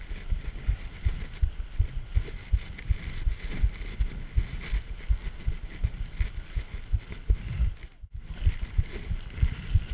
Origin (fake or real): real